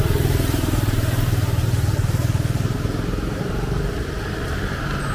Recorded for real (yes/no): no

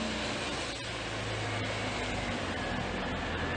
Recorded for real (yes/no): yes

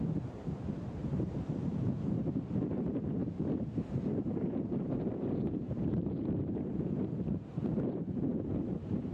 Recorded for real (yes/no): no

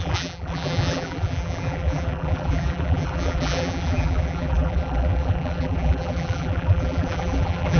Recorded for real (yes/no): no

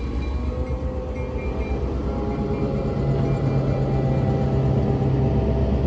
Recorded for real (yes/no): yes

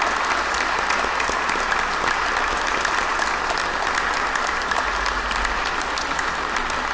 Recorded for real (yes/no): yes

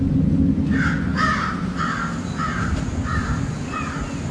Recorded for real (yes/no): yes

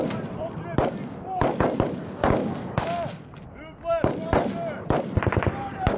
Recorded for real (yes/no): yes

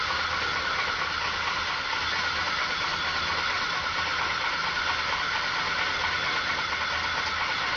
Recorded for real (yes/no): yes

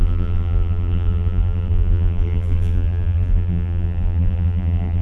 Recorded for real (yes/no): no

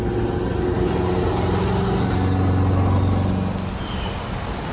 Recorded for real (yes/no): yes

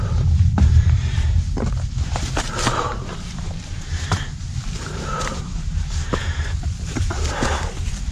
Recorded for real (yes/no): no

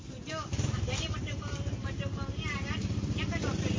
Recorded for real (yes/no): no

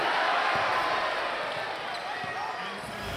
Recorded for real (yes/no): yes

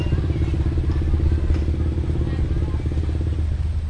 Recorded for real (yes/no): yes